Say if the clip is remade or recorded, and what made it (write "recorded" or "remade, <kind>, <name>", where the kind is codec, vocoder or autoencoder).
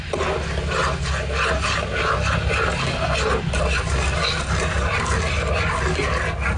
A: recorded